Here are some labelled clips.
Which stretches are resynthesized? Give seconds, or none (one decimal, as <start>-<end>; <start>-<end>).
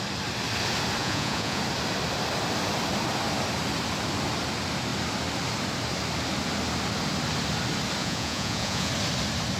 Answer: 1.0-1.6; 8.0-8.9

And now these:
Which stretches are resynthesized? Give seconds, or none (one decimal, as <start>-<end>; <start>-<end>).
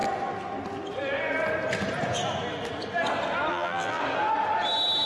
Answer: 3.5-4.0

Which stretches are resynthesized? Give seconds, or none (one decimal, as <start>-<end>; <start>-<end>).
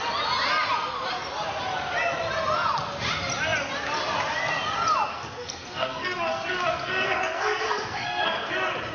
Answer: 5.1-8.5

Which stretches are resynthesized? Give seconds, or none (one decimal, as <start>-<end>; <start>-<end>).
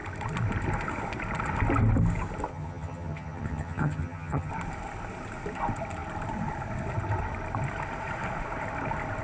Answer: 2.5-4.5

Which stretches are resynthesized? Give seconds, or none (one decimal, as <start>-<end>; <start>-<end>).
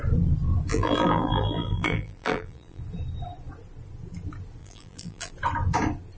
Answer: 0.7-2.8; 4.6-5.3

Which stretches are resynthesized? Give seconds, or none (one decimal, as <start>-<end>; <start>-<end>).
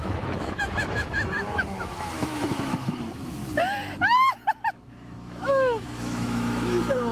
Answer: 0.0-3.4; 4.5-7.1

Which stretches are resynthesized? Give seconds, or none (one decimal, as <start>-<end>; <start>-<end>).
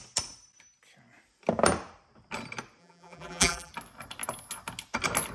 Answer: 2.8-3.7